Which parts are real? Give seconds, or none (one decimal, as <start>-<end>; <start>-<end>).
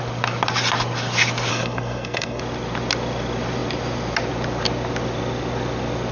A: 0.0-1.5; 2.4-6.1